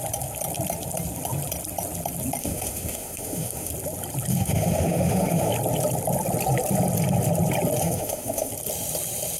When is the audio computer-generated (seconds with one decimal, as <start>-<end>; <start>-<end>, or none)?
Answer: 2.4-3.7; 4.3-5.5; 7.8-8.5